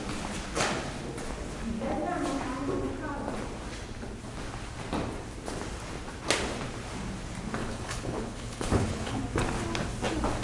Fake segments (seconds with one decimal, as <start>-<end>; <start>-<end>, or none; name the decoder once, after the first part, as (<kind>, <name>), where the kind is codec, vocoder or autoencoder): 7.6-9.2 (codec, HILCodec)